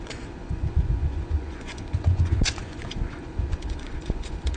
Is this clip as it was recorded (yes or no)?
no